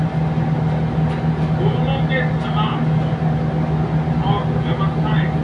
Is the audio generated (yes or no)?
no